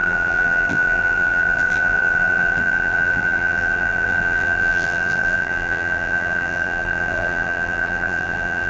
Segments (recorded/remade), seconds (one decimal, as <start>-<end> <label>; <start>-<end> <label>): 0.0-8.7 remade